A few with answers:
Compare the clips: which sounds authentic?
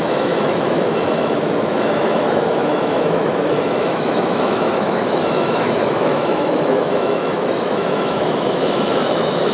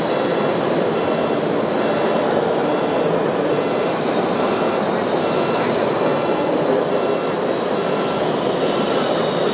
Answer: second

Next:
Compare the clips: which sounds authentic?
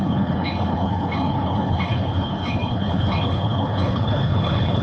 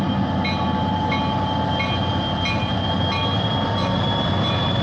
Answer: second